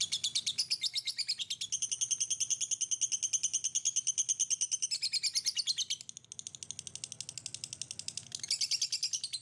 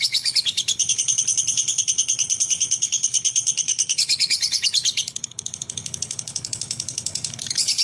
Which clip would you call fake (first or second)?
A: second